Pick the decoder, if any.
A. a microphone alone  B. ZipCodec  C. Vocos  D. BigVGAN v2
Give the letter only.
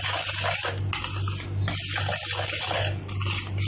A